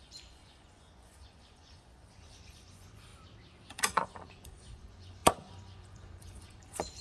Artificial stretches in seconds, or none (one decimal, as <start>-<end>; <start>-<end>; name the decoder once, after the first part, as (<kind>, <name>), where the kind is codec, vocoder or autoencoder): 0.0-3.1 (vocoder, Vocos); 3.7-7.0